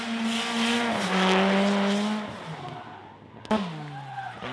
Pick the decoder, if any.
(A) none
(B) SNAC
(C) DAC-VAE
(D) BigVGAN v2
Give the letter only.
A